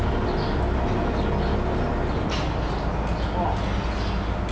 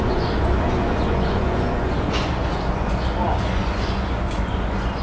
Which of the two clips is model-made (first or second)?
second